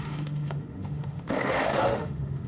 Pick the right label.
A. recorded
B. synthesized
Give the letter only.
B